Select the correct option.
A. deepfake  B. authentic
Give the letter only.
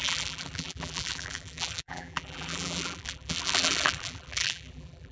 A